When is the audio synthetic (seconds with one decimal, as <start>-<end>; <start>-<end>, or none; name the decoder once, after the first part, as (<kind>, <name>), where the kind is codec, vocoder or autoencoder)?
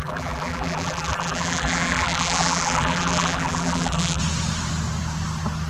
0.0-4.2 (vocoder, BigVGAN v2)